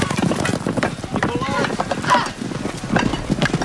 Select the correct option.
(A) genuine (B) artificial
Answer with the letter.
A